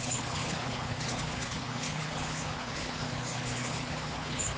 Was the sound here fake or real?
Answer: fake